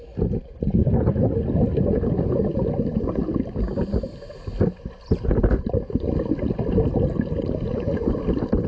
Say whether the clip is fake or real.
real